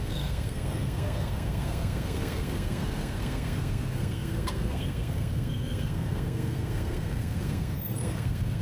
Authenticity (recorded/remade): remade